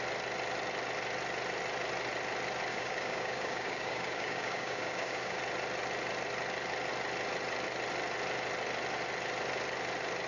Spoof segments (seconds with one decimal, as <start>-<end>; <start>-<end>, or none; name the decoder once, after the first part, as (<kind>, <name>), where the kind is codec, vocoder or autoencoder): 2.7-5.4 (codec, DAC)